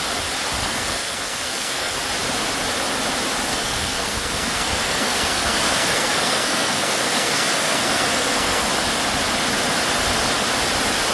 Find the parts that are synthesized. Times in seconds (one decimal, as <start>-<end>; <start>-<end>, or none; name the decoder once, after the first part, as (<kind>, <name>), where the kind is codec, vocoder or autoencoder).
0.6-2.0 (codec, SNAC); 3.5-8.7